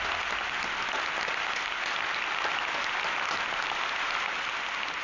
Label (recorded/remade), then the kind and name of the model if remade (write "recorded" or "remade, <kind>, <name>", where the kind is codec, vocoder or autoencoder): recorded